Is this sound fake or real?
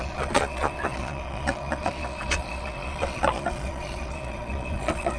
fake